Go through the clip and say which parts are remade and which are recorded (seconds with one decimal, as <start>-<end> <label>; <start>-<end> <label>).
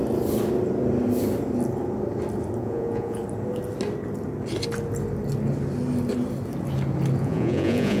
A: 0.0-2.6 recorded; 2.6-3.2 remade; 3.2-7.2 recorded; 7.2-8.0 remade